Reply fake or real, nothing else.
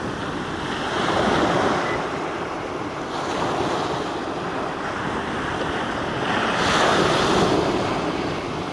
real